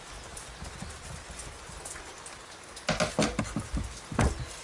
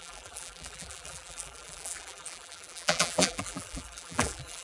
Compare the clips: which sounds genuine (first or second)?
first